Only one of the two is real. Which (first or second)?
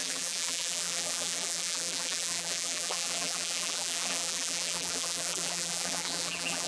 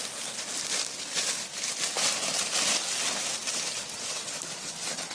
second